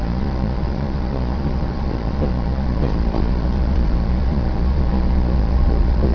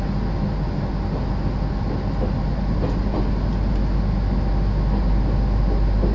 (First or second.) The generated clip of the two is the first